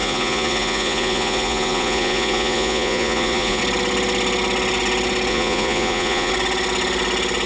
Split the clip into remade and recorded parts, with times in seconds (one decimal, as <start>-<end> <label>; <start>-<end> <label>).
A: 0.0-3.6 remade; 3.6-5.3 recorded; 5.3-6.3 remade; 6.3-7.5 recorded